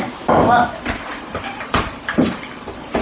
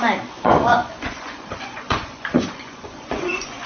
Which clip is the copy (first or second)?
second